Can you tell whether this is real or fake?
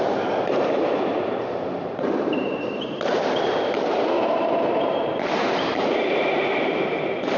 fake